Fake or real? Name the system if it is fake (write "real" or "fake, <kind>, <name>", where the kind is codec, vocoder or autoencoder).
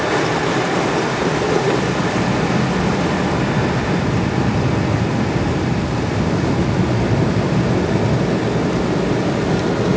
real